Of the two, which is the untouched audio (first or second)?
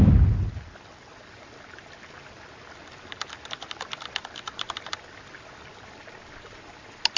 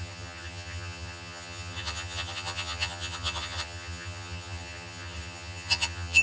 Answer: first